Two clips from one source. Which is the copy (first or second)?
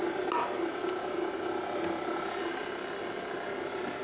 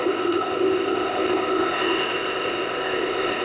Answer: second